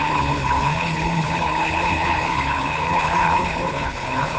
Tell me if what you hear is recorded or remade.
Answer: remade